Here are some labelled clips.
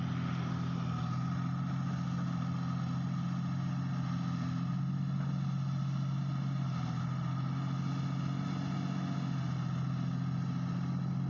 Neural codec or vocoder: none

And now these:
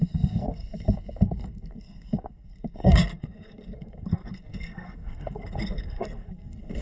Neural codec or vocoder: codec, SNAC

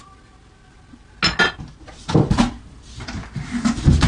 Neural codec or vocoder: none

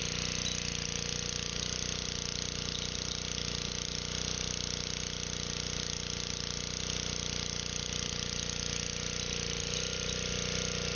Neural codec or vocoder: none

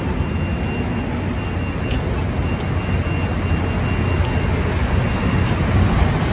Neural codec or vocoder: none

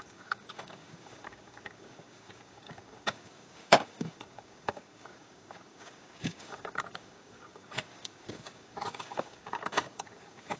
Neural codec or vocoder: codec, DAC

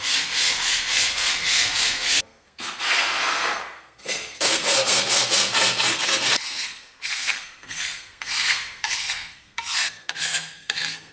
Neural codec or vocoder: codec, SNAC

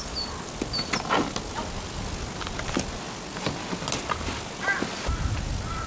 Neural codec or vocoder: none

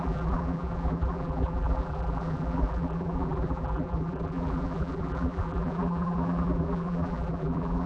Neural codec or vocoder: vocoder, BigVGAN v2